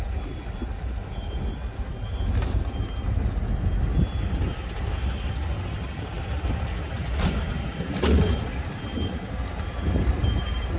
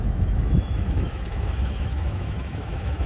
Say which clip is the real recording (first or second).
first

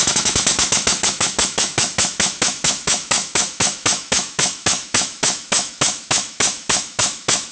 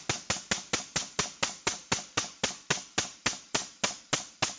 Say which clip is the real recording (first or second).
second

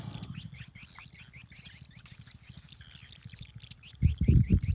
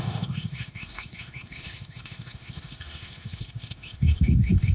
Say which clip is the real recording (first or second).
first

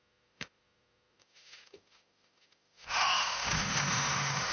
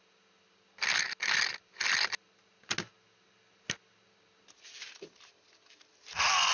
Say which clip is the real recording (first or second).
second